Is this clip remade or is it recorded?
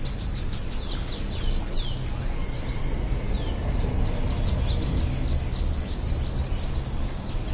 recorded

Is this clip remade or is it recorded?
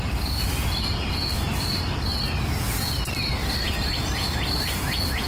recorded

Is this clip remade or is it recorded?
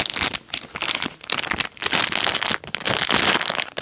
recorded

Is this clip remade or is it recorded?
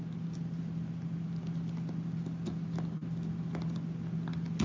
recorded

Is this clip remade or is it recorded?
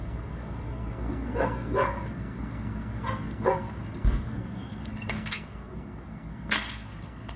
remade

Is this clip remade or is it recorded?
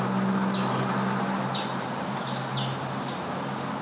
recorded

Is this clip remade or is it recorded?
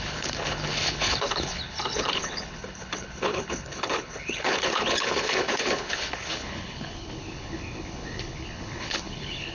remade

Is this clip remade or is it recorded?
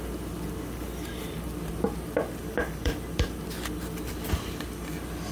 remade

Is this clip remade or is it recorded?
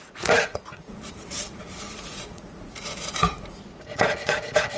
remade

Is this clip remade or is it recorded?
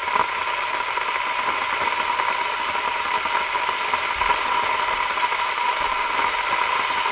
recorded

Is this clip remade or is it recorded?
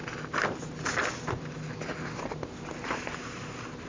recorded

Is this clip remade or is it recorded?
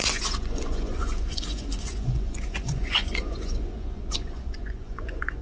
remade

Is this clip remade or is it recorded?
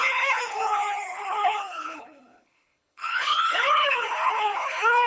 remade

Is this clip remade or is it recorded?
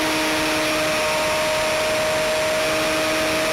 recorded